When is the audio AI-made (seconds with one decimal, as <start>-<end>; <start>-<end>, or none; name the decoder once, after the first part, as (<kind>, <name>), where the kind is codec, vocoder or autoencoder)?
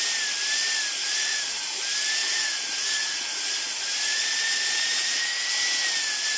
1.0-1.6 (vocoder, Vocos); 2.2-5.5